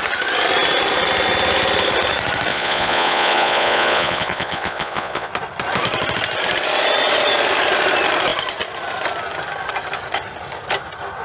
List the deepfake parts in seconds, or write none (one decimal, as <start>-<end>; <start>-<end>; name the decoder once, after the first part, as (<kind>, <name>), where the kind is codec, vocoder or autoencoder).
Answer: 2.5-5.3 (vocoder, Vocos)

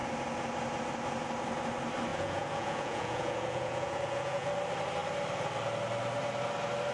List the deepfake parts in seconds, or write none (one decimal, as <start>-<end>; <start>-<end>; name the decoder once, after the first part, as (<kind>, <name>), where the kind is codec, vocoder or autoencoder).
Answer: 2.1-4.5 (vocoder, Vocos)

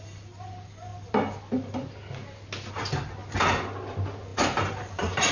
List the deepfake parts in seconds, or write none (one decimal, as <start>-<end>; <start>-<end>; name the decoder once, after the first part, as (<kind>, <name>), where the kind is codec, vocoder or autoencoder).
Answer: none

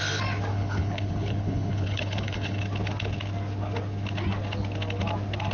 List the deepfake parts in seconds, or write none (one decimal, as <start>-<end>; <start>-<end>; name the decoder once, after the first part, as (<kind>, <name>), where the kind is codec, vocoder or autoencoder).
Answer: 0.5-2.6 (codec, HILCodec)

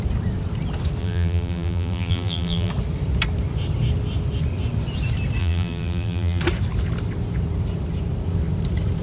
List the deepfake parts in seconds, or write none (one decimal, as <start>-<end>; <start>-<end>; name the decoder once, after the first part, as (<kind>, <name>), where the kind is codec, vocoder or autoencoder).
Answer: 1.0-2.7 (vocoder, BigVGAN v2); 5.4-6.4